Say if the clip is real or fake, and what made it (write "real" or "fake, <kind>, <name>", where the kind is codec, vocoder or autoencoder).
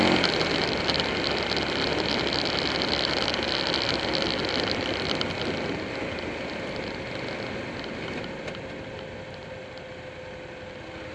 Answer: real